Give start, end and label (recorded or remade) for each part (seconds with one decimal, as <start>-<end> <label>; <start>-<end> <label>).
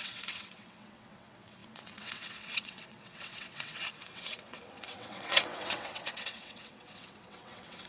0.0-7.9 remade